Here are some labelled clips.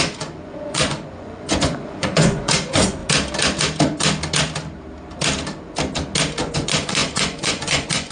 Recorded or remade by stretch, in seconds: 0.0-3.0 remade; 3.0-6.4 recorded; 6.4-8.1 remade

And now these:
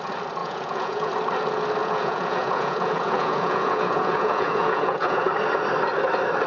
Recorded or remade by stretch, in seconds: 0.0-0.4 recorded; 0.4-1.1 remade; 1.1-1.8 recorded; 1.8-5.3 remade; 5.3-6.5 recorded

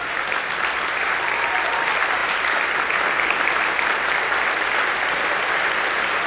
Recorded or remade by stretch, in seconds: 0.0-6.3 recorded

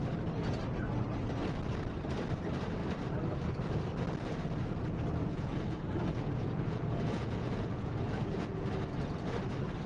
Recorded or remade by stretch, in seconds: 0.0-5.2 recorded; 5.2-8.6 remade; 8.6-9.9 recorded

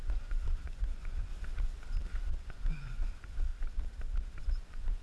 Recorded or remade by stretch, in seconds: 0.0-1.3 remade; 1.3-2.3 recorded; 2.3-3.5 remade; 3.5-4.4 recorded; 4.4-5.0 remade

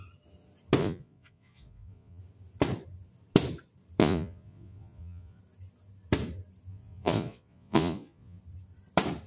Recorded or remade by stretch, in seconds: 0.0-0.8 recorded; 0.8-2.2 remade; 2.2-4.0 recorded; 4.0-5.4 remade; 5.4-6.7 recorded; 6.7-8.4 remade; 8.4-9.3 recorded

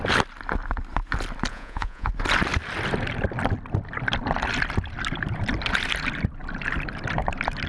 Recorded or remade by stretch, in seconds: 0.0-1.5 recorded; 1.5-2.1 remade; 2.1-7.7 recorded